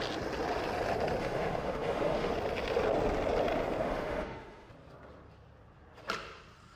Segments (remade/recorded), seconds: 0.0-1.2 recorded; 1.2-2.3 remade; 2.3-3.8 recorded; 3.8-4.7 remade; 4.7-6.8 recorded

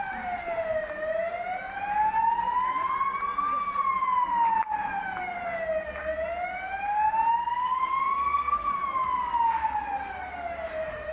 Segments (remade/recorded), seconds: 0.0-7.4 recorded; 7.4-8.7 remade; 8.7-11.1 recorded

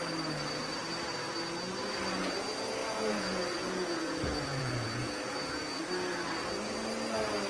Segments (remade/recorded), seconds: 0.0-2.8 recorded; 2.8-5.8 remade; 5.8-7.5 recorded

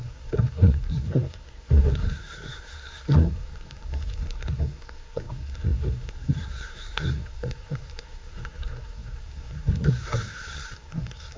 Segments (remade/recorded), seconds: 0.0-11.4 remade